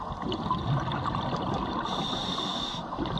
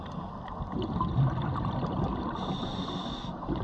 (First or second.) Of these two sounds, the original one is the second